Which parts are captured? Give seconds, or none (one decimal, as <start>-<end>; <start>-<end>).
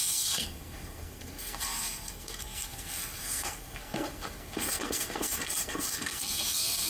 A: none